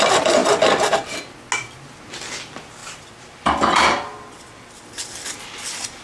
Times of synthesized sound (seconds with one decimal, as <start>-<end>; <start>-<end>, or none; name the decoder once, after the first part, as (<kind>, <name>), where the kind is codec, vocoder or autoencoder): 2.8-4.4 (vocoder, BigVGAN v2)